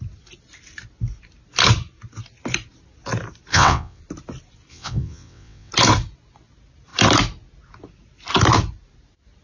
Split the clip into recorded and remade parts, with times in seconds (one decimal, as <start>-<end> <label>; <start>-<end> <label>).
0.0-3.5 recorded; 3.5-4.0 remade; 4.0-4.7 recorded; 4.7-5.7 remade; 5.7-9.4 recorded